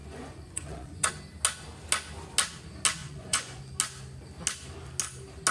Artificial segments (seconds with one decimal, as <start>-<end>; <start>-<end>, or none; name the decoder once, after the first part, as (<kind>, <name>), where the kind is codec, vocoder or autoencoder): 0.0-1.1 (vocoder, Vocos); 3.0-3.6